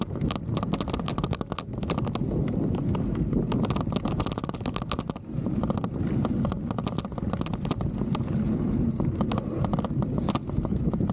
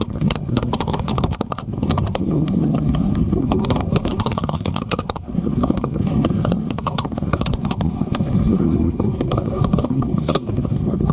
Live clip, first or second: first